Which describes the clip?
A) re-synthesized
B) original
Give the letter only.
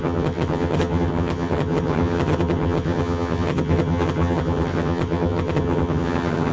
A